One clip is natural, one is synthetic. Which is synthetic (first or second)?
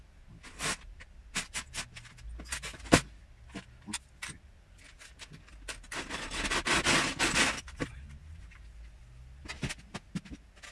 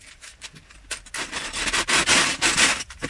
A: second